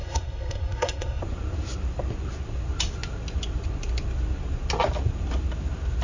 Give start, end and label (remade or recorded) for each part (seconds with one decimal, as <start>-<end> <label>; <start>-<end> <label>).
0.0-1.2 remade; 1.2-6.0 recorded